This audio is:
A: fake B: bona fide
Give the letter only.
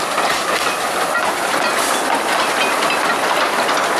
B